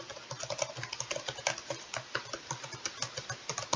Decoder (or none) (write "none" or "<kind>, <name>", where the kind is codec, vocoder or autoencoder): none